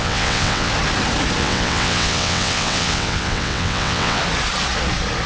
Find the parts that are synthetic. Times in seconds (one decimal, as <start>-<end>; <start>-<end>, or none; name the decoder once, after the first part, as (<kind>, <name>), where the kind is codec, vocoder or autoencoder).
0.0-0.7 (vocoder, WaveNeXt); 1.4-4.2